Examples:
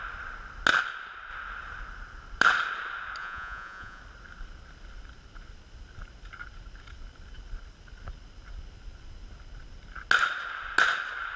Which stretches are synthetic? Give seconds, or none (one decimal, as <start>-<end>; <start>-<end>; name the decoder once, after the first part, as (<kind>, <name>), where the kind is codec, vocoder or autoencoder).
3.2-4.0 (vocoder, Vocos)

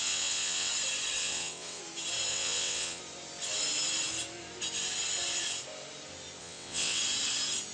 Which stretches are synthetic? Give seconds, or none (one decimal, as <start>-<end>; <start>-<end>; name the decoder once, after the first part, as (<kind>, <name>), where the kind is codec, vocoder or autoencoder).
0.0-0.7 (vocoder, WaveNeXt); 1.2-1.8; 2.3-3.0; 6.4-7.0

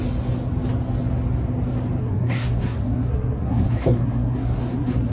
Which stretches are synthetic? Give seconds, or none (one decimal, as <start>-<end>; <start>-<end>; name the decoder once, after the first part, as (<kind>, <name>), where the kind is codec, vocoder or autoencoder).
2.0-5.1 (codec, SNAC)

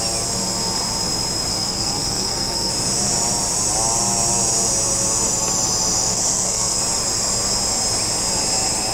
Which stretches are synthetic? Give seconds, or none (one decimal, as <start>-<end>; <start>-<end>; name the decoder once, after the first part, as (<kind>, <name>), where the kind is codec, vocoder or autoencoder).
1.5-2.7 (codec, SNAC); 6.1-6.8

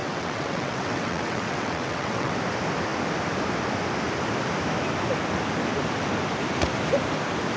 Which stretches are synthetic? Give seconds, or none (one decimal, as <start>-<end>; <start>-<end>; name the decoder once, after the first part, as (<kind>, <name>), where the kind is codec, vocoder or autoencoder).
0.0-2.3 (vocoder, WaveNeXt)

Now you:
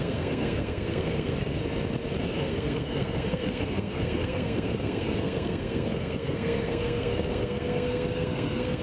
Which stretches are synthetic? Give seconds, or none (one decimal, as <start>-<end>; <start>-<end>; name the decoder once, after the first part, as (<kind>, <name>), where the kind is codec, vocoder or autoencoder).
0.0-1.6 (codec, SNAC); 2.2-8.8

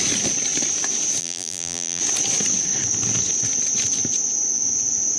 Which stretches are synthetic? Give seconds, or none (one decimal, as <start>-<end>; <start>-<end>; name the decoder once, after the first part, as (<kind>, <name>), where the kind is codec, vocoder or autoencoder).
1.2-2.0 (vocoder, BigVGAN v2)